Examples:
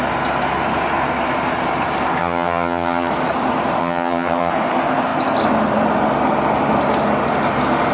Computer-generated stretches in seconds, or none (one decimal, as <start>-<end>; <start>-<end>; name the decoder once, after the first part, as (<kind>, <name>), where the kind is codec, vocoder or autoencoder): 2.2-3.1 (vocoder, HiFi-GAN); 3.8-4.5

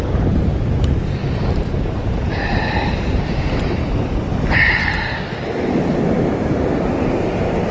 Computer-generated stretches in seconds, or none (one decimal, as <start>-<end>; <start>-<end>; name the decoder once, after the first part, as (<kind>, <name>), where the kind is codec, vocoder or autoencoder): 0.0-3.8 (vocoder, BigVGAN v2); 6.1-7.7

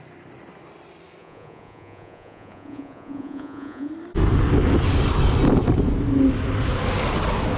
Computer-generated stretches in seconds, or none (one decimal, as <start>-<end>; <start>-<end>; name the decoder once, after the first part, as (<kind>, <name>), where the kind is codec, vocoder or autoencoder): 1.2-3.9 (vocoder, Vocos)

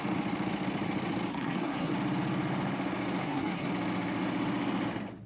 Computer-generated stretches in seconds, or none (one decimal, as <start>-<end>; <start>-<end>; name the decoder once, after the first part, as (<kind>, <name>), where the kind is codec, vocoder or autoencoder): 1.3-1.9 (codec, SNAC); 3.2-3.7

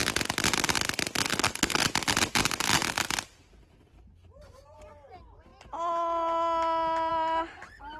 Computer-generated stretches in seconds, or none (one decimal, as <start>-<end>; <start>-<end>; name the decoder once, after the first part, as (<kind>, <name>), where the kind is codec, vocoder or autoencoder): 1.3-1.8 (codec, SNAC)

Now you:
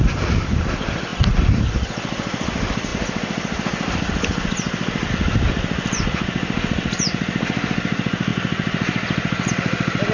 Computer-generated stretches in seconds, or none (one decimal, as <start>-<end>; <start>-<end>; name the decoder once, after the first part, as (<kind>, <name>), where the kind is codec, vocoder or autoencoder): none

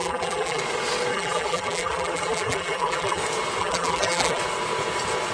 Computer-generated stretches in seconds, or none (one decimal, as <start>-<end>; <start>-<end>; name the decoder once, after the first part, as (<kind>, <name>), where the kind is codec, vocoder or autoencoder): 0.0-0.6 (vocoder, BigVGAN v2); 1.1-3.2; 3.6-4.4